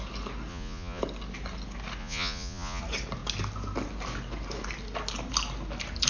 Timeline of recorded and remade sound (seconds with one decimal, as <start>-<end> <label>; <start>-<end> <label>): 0.0-0.5 recorded; 0.5-1.0 remade; 1.0-2.0 recorded; 2.0-2.8 remade; 2.8-6.1 recorded